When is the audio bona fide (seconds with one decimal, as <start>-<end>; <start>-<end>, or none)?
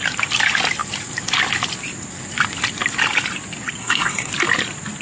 0.0-3.8; 4.3-5.0